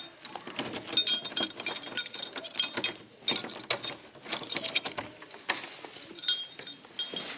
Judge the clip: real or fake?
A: real